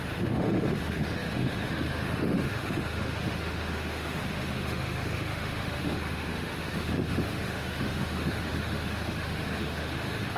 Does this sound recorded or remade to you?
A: remade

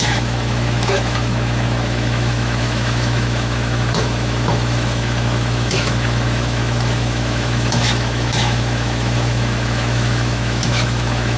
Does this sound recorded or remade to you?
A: remade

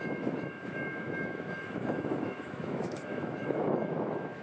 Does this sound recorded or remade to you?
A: remade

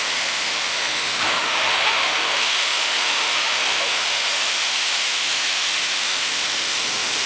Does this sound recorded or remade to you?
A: remade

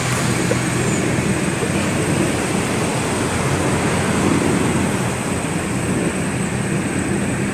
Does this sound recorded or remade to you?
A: recorded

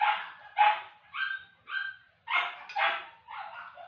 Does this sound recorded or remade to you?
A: recorded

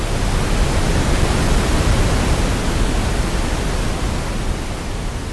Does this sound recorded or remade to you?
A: recorded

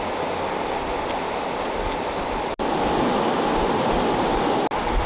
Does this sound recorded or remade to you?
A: recorded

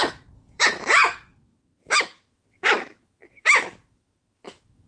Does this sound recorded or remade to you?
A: remade